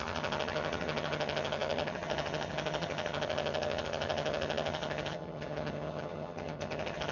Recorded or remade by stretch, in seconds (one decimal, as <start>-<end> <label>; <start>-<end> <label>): 0.0-7.1 remade